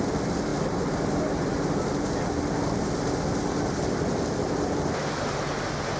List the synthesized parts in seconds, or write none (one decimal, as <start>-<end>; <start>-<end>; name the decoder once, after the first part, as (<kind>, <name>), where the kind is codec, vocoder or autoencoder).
none